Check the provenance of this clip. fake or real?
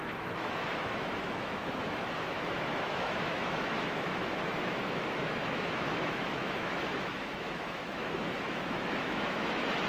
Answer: fake